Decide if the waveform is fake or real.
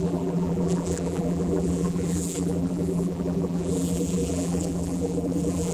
fake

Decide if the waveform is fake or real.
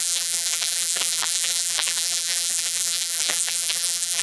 fake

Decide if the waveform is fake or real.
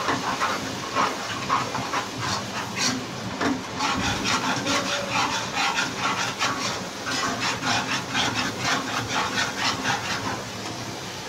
real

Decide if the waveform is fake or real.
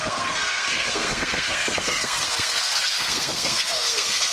fake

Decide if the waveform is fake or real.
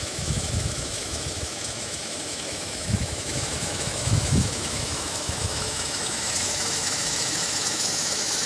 fake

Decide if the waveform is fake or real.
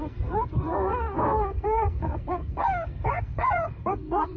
fake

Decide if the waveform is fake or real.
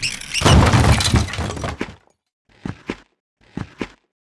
real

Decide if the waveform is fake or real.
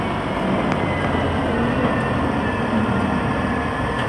real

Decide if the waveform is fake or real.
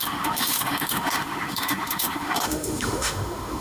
fake